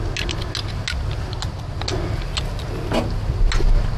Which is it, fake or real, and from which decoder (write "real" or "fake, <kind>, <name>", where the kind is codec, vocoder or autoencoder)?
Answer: real